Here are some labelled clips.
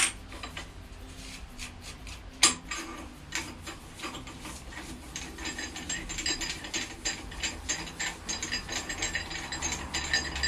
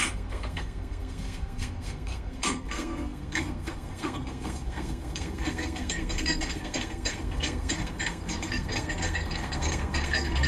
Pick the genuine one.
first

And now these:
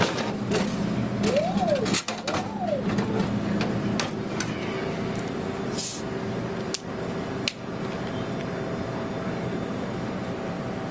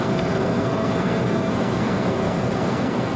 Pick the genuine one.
first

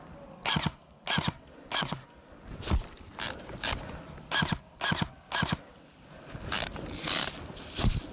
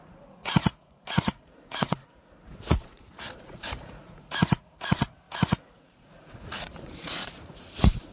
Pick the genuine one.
first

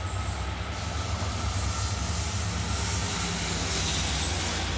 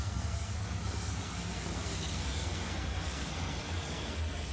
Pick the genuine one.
first